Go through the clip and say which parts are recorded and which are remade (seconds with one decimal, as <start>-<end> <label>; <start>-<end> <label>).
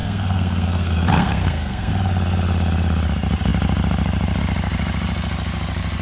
0.0-1.9 remade; 1.9-6.0 recorded